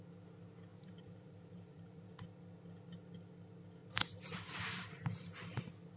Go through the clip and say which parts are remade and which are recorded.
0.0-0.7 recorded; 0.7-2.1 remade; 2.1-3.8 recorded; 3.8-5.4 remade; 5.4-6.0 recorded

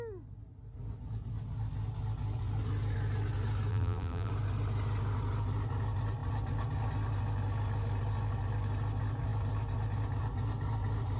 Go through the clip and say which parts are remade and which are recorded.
0.0-3.7 recorded; 3.7-4.3 remade; 4.3-11.2 recorded

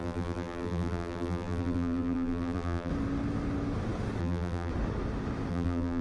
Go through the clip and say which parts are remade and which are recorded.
0.0-2.9 remade; 2.9-4.2 recorded; 4.2-4.7 remade; 4.7-5.5 recorded; 5.5-6.0 remade

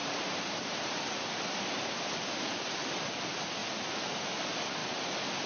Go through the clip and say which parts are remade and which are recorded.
0.0-1.9 remade; 1.9-3.6 recorded; 3.6-4.3 remade; 4.3-5.5 recorded